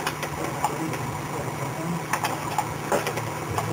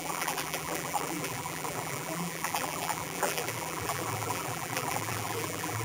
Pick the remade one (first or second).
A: second